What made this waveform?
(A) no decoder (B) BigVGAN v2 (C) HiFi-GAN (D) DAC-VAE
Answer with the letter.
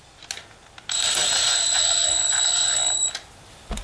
A